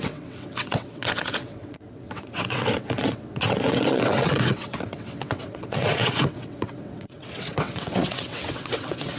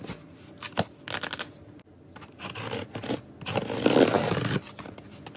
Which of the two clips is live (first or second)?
second